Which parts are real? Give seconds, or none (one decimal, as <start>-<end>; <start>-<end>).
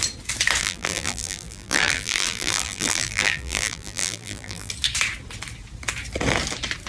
0.0-0.6; 4.7-6.9